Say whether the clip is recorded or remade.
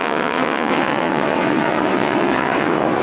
remade